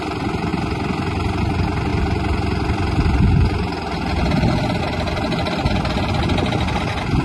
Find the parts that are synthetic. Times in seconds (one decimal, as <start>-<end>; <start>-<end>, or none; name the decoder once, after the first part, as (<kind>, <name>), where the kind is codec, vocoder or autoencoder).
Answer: none